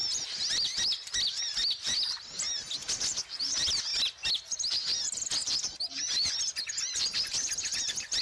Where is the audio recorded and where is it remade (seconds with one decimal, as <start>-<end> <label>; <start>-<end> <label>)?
0.0-8.2 remade